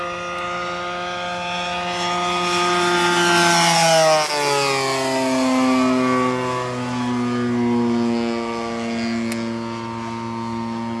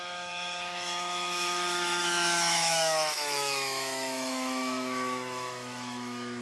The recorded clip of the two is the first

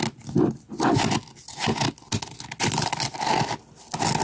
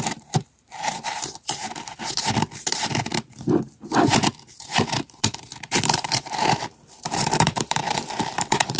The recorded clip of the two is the first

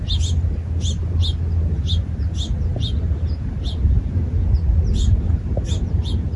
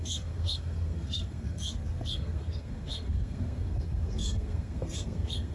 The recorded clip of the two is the first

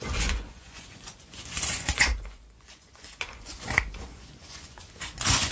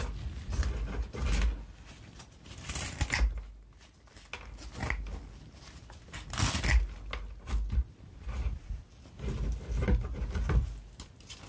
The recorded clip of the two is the second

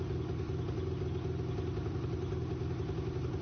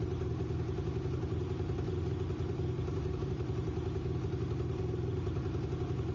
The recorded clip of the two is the first